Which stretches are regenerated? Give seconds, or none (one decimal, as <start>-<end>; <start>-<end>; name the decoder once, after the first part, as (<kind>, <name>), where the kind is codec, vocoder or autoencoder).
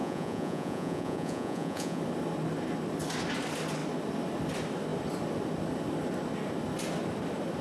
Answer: 0.0-2.0 (vocoder, Vocos)